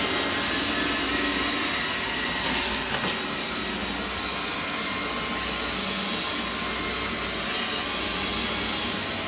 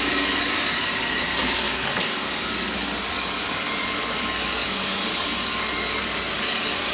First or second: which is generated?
second